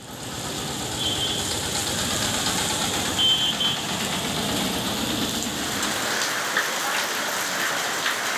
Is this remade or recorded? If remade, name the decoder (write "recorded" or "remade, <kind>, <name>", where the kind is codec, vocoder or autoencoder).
recorded